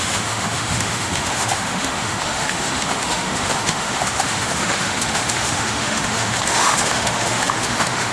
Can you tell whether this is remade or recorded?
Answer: remade